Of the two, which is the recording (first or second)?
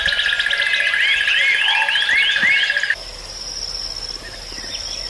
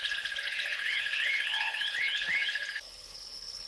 first